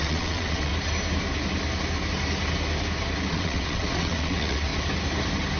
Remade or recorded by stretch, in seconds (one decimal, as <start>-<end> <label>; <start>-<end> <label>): 0.0-0.7 remade; 0.7-3.3 recorded; 3.3-4.7 remade; 4.7-5.6 recorded